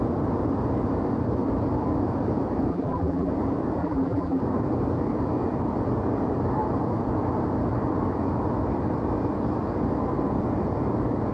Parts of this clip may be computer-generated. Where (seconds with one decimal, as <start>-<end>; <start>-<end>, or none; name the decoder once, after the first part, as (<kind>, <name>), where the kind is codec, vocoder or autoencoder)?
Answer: 2.7-3.3 (vocoder, BigVGAN v2); 3.8-4.4